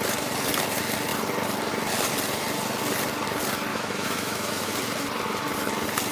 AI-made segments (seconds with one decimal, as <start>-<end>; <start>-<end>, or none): 3.7-4.7